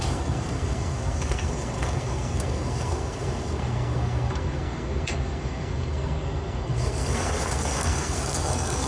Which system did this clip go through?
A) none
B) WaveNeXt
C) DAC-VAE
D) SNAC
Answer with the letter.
D